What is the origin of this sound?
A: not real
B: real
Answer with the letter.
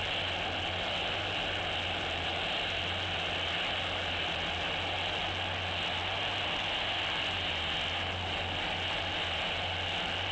B